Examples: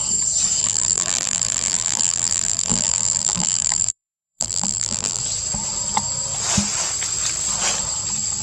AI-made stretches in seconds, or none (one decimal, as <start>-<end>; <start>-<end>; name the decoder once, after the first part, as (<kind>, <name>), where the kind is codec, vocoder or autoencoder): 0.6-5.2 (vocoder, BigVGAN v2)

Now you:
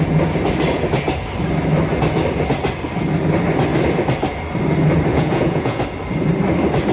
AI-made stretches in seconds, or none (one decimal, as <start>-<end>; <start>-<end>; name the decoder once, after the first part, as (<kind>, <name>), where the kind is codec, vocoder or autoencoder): 5.1-5.8 (vocoder, Vocos)

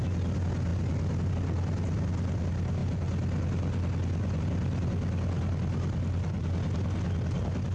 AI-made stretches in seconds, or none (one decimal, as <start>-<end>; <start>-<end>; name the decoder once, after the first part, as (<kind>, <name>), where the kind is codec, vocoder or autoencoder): none

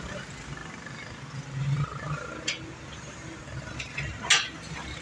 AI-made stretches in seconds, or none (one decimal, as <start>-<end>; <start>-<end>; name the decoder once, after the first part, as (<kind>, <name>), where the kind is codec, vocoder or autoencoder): none

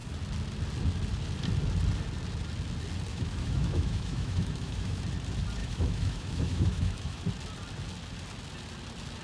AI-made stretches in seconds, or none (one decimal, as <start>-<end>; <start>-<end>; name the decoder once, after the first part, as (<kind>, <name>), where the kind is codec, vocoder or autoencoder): 3.1-5.0 (autoencoder, DAC-VAE); 5.6-7.2

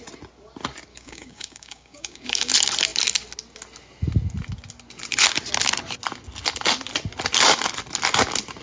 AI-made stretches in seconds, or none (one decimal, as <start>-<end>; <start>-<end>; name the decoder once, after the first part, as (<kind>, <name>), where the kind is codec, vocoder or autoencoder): 0.9-2.5 (codec, DAC)

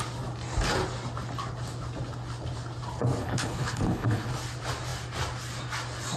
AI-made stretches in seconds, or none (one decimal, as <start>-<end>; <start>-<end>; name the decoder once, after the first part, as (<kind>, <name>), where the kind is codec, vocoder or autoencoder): 3.2-4.3 (codec, HILCodec)

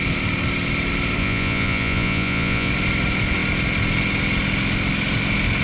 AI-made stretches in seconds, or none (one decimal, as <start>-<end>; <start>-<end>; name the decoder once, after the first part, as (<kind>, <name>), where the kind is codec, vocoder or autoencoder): 1.2-2.7 (vocoder, Vocos)